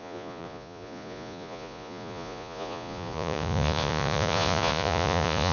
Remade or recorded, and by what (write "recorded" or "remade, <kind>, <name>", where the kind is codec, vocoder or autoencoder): remade, vocoder, Vocos